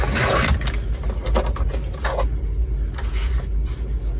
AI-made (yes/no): no